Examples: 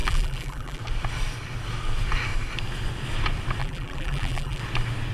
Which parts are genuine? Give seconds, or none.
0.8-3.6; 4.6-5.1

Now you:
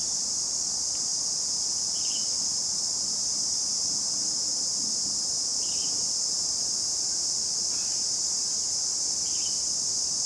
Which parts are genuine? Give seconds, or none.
0.0-10.3

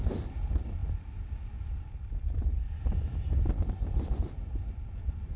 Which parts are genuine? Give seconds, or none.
0.0-0.8; 4.0-5.4

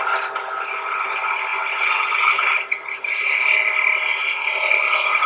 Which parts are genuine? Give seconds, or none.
0.0-5.3